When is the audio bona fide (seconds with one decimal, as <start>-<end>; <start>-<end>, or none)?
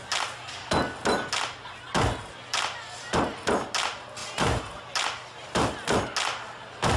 0.0-4.2; 4.8-7.0